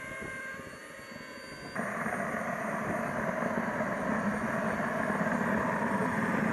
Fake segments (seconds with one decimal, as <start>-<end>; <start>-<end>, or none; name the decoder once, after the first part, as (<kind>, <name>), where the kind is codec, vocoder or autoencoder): none